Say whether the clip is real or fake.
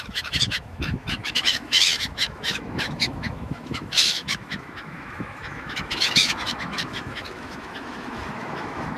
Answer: fake